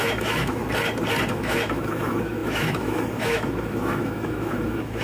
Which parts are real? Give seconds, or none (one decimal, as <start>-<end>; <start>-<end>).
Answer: 0.6-1.3